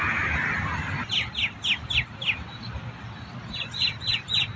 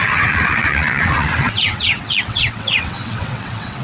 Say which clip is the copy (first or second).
second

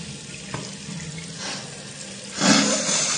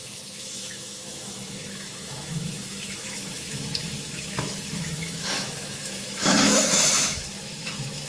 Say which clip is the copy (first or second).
second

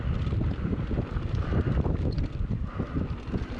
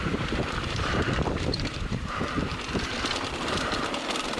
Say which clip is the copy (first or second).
second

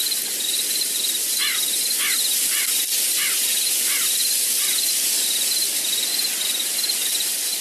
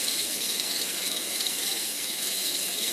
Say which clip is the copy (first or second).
second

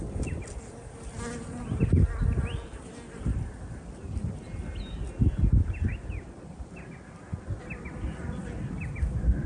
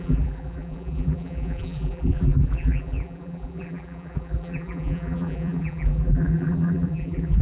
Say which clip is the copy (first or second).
second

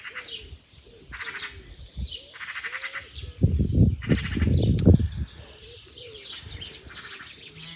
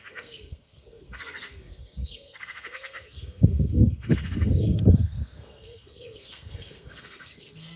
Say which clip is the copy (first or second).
second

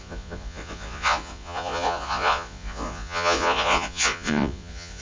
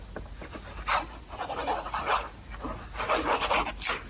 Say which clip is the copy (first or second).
first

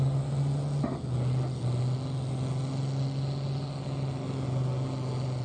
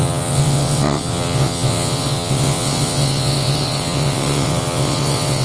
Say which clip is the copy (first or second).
second